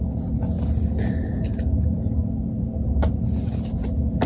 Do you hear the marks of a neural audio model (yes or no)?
no